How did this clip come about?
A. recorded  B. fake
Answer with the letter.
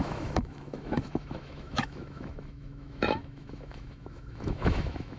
B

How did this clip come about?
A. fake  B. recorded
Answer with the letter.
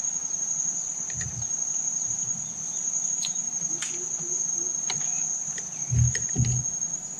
B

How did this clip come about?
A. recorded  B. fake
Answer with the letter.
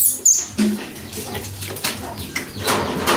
A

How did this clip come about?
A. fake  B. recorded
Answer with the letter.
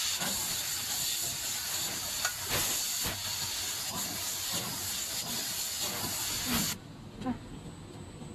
B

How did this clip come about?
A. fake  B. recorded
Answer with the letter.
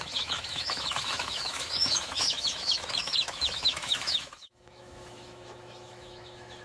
A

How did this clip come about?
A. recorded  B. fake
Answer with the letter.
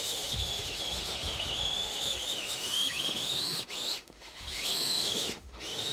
B